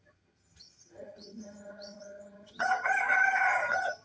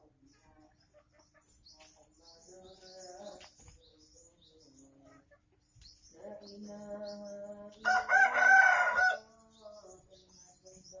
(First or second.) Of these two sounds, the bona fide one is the second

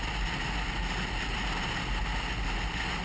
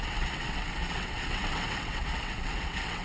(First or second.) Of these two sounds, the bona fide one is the first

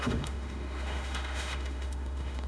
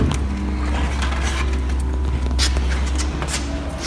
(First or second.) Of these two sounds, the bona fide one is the second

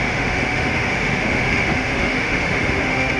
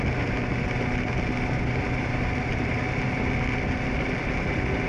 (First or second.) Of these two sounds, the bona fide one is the second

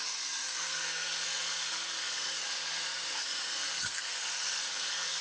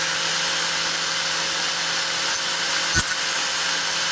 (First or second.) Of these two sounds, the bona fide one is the second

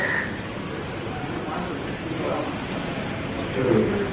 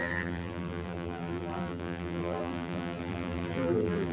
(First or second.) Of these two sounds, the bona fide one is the first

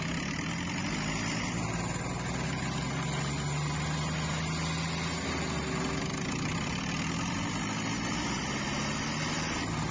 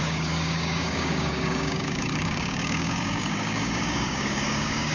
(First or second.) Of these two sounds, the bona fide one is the first